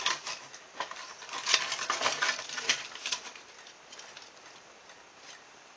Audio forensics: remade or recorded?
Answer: recorded